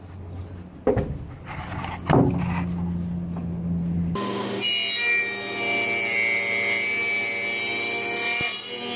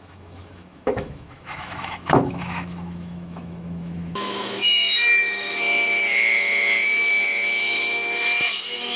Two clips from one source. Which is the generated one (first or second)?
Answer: second